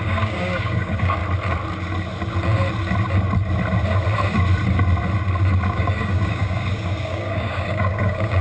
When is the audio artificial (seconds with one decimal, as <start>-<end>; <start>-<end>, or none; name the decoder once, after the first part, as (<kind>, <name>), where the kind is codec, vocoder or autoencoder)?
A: 0.0-1.2 (codec, DAC); 5.5-8.4